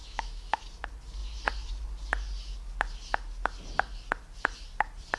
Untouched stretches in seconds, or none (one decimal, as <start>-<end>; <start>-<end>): 0.6-5.2